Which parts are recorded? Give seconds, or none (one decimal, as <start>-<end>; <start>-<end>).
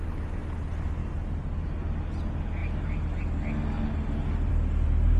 0.0-5.2